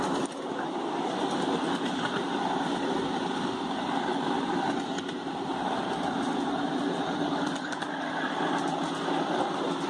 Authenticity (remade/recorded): recorded